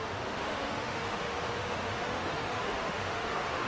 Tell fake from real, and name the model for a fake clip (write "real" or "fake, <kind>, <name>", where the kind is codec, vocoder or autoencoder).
fake, autoencoder, DAC-VAE